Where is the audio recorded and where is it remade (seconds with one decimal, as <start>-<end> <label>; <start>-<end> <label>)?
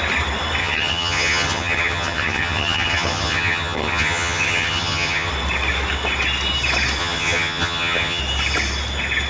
0.0-0.6 recorded; 0.6-5.3 remade; 5.3-7.0 recorded; 7.0-8.2 remade; 8.2-9.3 recorded